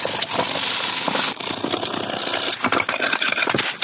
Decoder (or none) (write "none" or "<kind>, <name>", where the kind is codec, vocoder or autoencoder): none